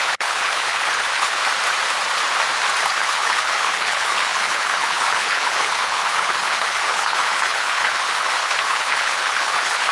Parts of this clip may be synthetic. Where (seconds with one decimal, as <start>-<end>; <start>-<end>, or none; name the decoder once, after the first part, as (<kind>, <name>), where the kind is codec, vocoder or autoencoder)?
0.0-1.4 (codec, HILCodec); 2.9-9.9